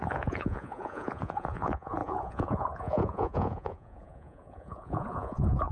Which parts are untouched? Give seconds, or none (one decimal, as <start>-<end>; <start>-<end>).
none